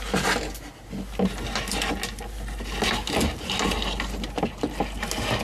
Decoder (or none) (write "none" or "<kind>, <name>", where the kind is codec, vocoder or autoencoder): none